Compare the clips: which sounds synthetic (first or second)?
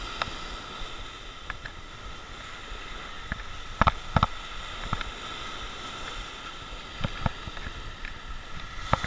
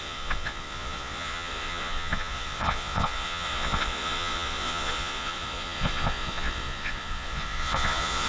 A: second